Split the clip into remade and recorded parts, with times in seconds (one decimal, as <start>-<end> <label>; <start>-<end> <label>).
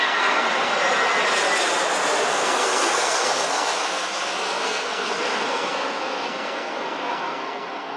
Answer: 0.0-0.7 remade; 0.7-2.3 recorded; 2.3-8.0 remade